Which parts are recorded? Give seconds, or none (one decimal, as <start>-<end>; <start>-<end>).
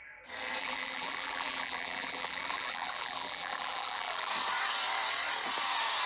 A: 0.0-0.6; 4.3-6.1